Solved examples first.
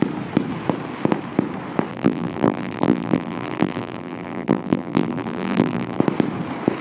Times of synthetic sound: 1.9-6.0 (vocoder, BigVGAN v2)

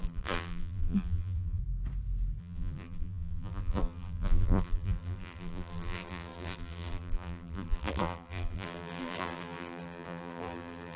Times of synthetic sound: 0.0-1.6 (vocoder, BigVGAN v2); 2.4-11.0

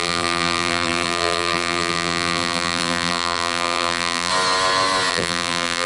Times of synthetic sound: 0.0-4.3 (vocoder, BigVGAN v2); 5.1-5.9

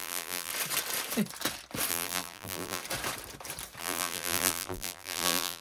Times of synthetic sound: 0.0-0.5 (vocoder, BigVGAN v2); 1.9-2.8; 3.8-5.6

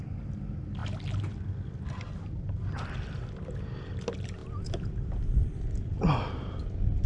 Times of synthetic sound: none

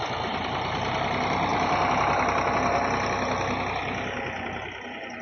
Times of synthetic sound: none

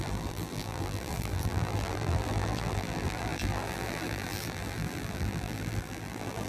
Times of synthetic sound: 0.0-6.5 (vocoder, BigVGAN v2)

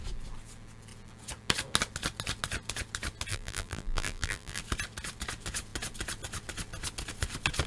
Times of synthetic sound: 3.3-4.6 (vocoder, BigVGAN v2)